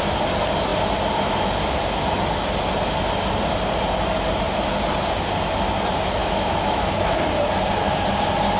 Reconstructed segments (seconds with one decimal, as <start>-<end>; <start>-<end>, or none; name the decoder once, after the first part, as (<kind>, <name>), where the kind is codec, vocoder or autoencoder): 6.2-7.2 (autoencoder, DAC-VAE)